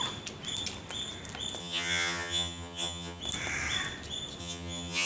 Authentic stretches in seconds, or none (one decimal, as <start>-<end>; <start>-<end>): 0.0-1.6; 3.2-4.4